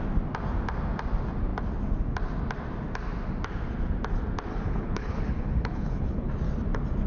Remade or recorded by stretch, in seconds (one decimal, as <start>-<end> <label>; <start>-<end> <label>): 0.0-4.5 recorded; 4.5-6.3 remade; 6.3-7.1 recorded